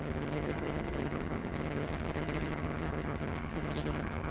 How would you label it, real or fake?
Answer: fake